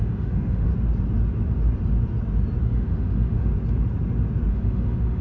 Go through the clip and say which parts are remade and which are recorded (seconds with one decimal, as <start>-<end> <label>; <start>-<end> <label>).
0.0-0.7 remade; 0.7-2.6 recorded; 2.6-3.5 remade; 3.5-4.5 recorded; 4.5-5.2 remade